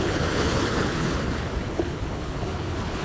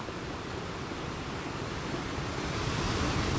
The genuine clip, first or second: second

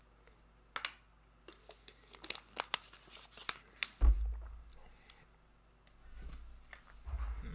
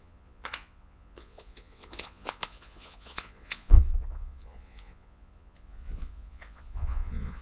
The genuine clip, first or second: first